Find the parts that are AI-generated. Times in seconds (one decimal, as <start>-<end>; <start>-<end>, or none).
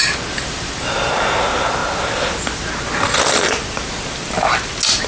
none